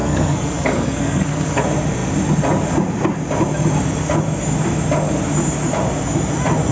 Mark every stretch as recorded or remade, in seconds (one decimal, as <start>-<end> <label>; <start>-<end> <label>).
0.0-1.6 remade; 1.6-6.7 recorded